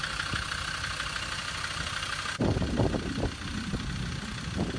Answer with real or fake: real